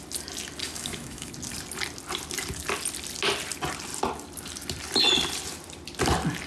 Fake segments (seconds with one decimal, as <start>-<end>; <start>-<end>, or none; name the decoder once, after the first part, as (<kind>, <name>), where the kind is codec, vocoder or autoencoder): 0.6-1.3 (autoencoder, DAC-VAE)